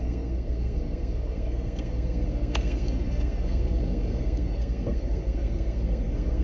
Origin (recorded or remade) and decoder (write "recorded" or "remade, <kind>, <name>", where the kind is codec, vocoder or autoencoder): remade, codec, SNAC